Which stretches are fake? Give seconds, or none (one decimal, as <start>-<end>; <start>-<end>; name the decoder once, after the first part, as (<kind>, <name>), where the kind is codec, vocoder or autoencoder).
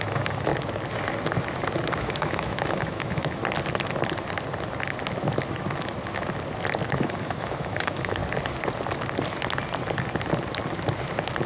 0.0-0.5 (autoencoder, DAC-VAE); 2.0-3.4; 6.9-8.2